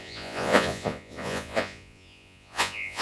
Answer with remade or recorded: remade